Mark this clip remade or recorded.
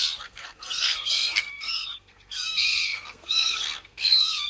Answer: remade